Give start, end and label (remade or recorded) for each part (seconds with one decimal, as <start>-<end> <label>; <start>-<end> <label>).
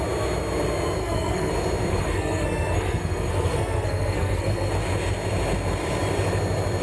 0.0-1.0 recorded; 1.0-1.5 remade; 1.5-1.9 recorded; 1.9-4.7 remade; 4.7-6.8 recorded